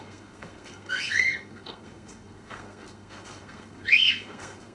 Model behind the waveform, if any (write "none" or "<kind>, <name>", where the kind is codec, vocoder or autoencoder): codec, SNAC